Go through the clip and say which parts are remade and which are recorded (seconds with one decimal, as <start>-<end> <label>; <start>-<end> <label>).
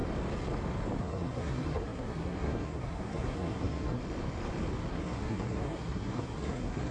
0.0-1.0 recorded; 1.0-4.0 remade; 4.0-4.9 recorded; 4.9-6.9 remade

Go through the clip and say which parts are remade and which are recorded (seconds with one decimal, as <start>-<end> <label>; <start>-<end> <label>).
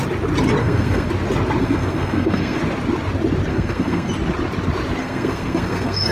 0.0-0.6 recorded; 0.6-1.1 remade; 1.1-1.6 recorded; 1.6-2.6 remade; 2.6-3.5 recorded; 3.5-4.1 remade; 4.1-5.0 recorded; 5.0-6.1 remade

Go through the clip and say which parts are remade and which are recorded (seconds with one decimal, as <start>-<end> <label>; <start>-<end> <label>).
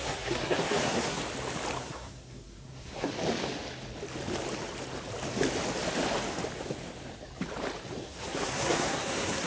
0.0-1.2 remade; 1.2-1.8 recorded; 1.8-3.1 remade; 3.1-8.0 recorded; 8.0-9.5 remade